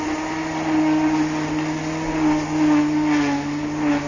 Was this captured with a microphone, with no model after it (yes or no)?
yes